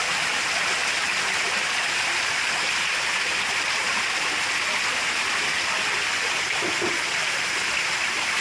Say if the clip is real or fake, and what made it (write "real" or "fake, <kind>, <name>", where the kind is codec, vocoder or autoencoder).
real